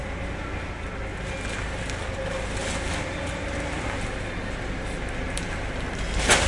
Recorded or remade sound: recorded